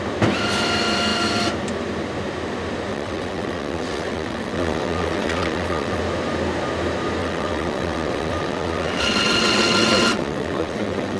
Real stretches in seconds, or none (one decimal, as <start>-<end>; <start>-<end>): 0.0-2.9; 6.0-7.2